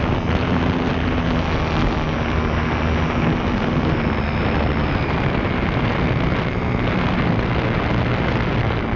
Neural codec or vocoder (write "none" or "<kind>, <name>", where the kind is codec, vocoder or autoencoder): none